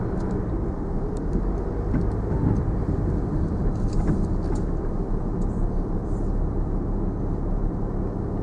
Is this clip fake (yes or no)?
no